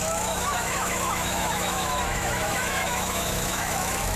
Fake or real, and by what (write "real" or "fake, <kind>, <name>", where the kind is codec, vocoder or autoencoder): fake, autoencoder, DAC-VAE